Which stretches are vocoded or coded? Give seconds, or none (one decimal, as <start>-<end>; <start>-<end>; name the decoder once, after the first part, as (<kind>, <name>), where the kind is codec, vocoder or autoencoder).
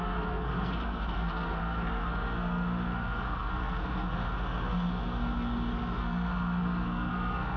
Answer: 0.0-7.6 (codec, SNAC)